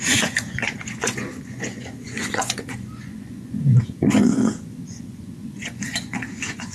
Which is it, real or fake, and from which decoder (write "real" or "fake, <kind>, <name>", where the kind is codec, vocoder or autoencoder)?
fake, vocoder, Vocos